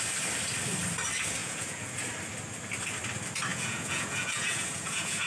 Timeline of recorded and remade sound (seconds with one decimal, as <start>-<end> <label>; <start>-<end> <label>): 0.0-1.4 recorded; 1.4-2.1 remade; 2.1-3.5 recorded; 3.5-5.3 remade